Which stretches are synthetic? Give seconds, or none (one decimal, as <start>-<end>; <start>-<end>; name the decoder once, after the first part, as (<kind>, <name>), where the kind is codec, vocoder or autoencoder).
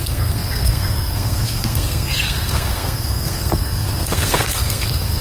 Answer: 0.0-5.2 (codec, SNAC)